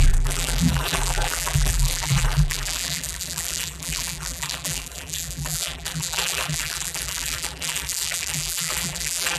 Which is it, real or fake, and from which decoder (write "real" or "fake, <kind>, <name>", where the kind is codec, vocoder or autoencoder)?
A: fake, vocoder, BigVGAN v2